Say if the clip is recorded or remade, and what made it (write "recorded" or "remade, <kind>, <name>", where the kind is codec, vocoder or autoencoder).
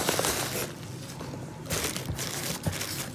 recorded